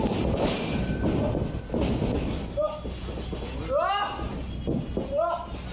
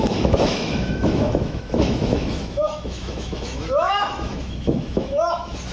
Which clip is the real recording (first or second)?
first